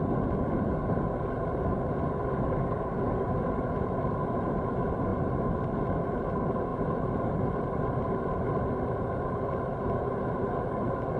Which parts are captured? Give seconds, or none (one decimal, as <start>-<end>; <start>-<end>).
0.0-11.2